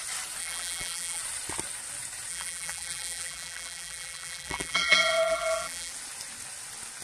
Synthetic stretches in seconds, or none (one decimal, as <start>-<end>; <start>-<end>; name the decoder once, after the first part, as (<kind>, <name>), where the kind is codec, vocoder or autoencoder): 0.4-1.2 (vocoder, BigVGAN v2); 2.3-5.9